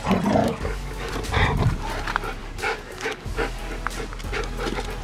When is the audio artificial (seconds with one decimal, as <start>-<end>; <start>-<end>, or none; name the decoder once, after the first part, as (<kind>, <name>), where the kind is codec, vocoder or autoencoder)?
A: 0.4-1.1 (codec, DAC); 2.4-3.6